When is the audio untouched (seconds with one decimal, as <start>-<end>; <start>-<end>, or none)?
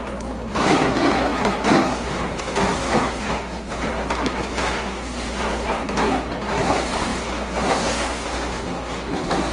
none